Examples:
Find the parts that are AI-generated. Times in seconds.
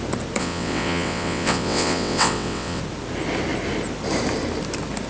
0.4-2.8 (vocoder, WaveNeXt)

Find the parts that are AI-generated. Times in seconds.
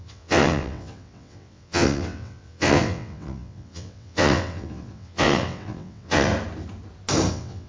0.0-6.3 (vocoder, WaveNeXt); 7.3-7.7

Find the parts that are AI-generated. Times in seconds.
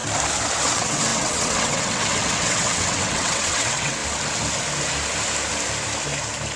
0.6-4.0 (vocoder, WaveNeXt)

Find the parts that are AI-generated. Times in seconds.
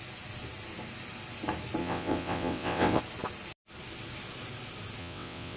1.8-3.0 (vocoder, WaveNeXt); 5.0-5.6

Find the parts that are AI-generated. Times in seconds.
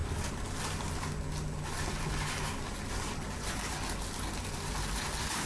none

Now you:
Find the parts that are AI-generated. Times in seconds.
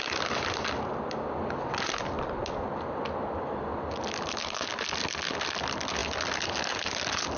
none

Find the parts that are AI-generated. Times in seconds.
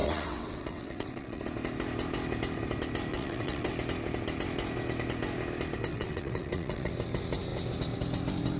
0.0-1.4 (vocoder, WaveNeXt); 3.1-3.7; 5.9-6.9